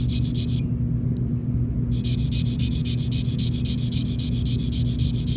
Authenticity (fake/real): real